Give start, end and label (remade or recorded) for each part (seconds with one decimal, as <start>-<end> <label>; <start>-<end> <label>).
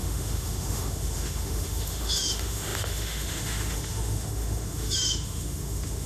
0.0-6.1 remade